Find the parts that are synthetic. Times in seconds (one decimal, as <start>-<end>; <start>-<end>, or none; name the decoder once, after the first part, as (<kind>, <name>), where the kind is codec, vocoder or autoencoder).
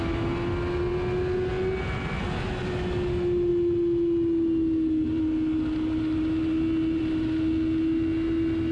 none